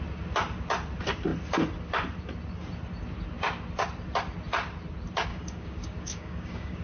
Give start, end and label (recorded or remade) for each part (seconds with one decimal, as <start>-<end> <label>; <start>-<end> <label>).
0.0-5.3 recorded; 5.3-6.8 remade